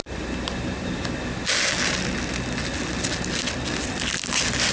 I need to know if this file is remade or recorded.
recorded